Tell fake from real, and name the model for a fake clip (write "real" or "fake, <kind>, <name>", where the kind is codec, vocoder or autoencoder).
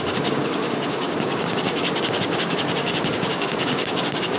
fake, codec, DAC